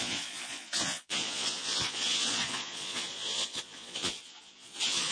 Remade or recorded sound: remade